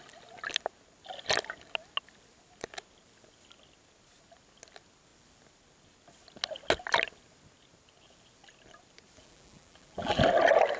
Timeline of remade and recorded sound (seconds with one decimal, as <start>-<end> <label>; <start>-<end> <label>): 0.0-9.2 recorded; 9.2-10.2 remade; 10.2-10.8 recorded